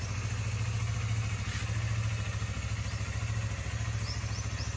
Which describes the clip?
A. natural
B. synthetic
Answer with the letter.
A